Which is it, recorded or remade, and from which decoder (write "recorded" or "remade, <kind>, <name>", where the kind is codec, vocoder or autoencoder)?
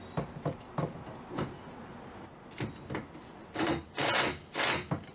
recorded